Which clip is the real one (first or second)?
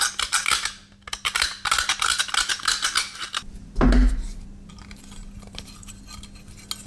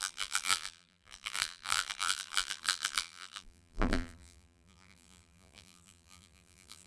first